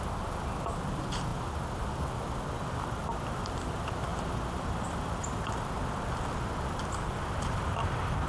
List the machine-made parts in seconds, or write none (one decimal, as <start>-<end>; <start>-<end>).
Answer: 4.1-7.9